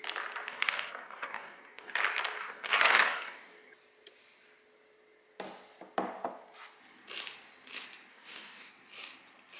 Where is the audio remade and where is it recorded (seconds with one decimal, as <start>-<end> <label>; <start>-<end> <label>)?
0.0-0.5 recorded; 0.5-2.0 remade; 2.0-2.4 recorded; 2.4-3.7 remade; 3.7-8.1 recorded; 8.1-8.7 remade; 8.7-9.6 recorded